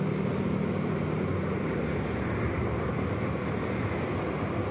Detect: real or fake real